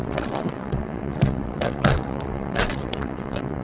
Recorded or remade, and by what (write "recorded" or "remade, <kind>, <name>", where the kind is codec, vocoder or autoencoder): remade, vocoder, WaveNeXt